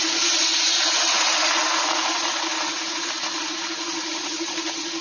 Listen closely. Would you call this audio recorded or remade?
remade